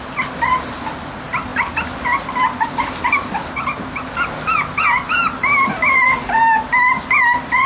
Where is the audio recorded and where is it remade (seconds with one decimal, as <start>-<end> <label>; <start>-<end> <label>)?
0.0-7.7 recorded